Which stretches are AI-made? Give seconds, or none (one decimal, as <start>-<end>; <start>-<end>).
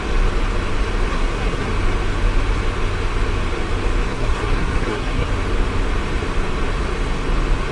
1.1-1.7; 4.1-5.3